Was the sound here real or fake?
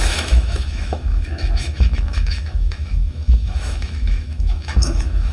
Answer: fake